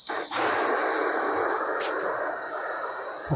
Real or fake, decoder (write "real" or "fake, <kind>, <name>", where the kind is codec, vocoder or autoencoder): real